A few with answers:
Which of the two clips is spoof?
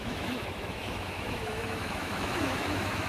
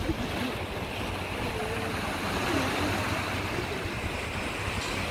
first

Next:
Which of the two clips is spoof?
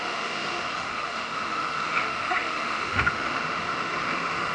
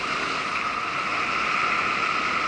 first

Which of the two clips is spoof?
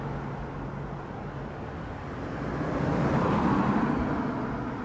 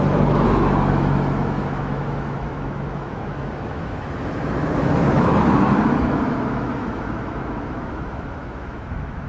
second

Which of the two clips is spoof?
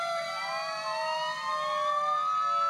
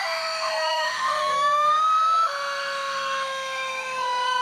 second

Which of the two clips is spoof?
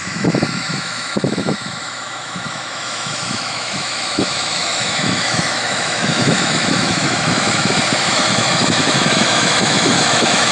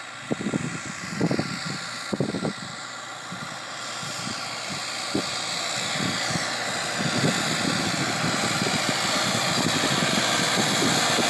first